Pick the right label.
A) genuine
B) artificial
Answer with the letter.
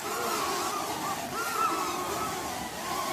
A